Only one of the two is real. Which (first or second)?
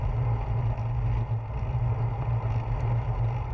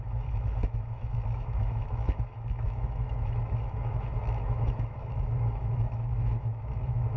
first